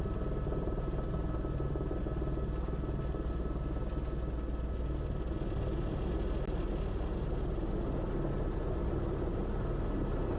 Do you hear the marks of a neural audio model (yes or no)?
no